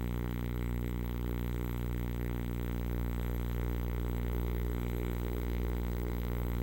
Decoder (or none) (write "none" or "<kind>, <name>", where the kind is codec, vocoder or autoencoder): codec, SNAC